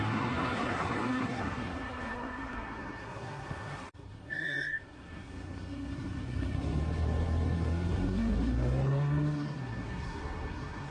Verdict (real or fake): fake